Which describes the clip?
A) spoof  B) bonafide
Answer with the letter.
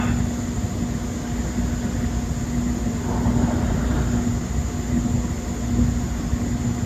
B